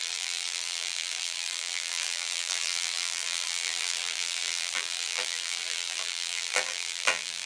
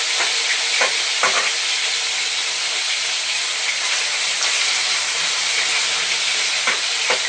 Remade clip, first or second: first